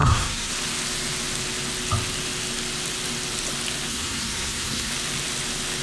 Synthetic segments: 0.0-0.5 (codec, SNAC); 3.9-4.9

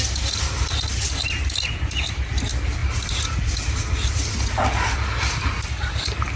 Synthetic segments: none

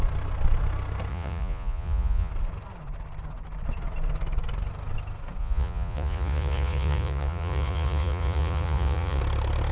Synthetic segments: 1.1-2.3 (vocoder, Vocos); 5.4-9.2

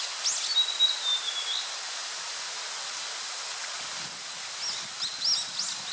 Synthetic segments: none

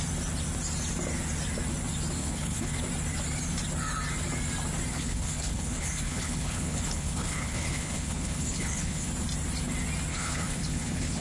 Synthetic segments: 2.2-2.8 (codec, HILCodec); 4.9-9.1; 10.1-11.2

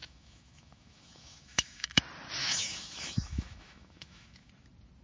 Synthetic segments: 0.0-2.0 (autoencoder, DAC-VAE); 2.4-4.5

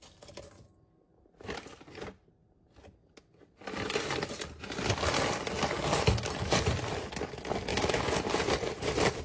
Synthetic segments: 7.7-8.2 (codec, DAC)

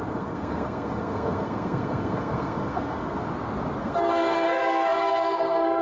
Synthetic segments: 0.0-3.2 (codec, SNAC); 3.8-5.8